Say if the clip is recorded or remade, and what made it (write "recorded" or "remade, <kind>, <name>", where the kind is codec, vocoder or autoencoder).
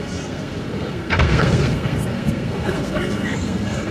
remade, codec, SNAC